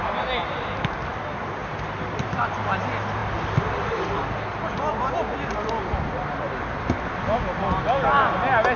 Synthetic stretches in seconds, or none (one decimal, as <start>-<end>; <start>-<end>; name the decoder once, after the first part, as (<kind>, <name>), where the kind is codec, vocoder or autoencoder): 1.6-2.6 (vocoder, BigVGAN v2); 3.2-7.8